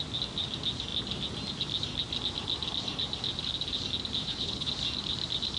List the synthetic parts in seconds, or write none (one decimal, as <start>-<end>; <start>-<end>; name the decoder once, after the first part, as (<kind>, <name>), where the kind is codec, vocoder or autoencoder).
4.2-4.7 (codec, HILCodec)